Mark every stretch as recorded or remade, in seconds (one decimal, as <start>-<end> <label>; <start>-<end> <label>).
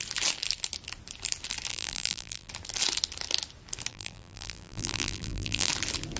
0.0-1.7 recorded; 1.7-2.5 remade; 2.5-3.9 recorded; 3.9-5.7 remade; 5.7-6.2 recorded